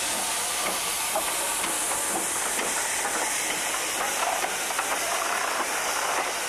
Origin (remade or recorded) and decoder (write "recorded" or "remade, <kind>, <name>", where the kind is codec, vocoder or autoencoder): remade, vocoder, BigVGAN v2